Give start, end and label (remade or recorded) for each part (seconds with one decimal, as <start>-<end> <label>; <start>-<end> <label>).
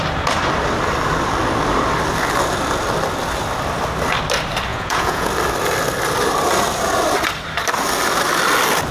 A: 0.0-4.7 recorded; 4.7-5.3 remade; 5.3-8.9 recorded